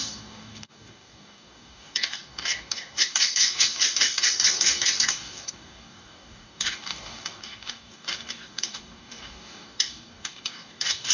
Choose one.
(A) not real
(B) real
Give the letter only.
A